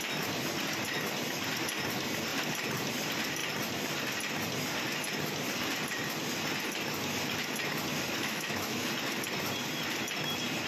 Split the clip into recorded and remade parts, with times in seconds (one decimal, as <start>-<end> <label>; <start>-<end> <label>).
0.0-8.2 recorded; 8.2-8.9 remade; 8.9-10.7 recorded